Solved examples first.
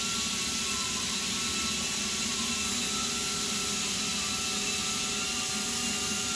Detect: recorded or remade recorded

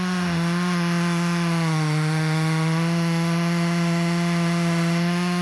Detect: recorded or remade remade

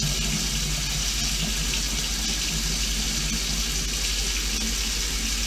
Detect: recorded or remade recorded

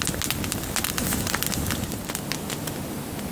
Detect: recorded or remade recorded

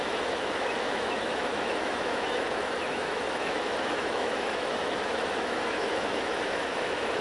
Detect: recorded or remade remade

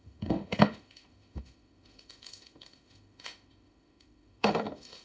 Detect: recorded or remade remade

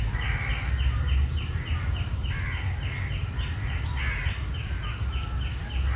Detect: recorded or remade recorded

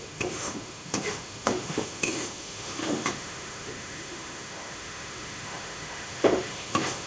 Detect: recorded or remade remade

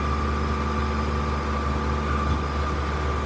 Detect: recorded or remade recorded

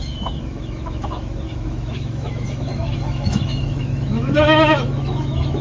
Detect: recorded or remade remade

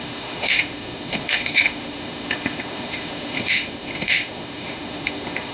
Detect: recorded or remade remade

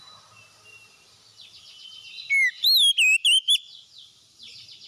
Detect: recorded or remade recorded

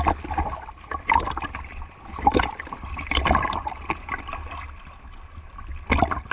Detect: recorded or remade recorded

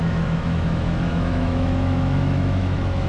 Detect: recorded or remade remade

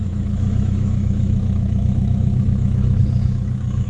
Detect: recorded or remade remade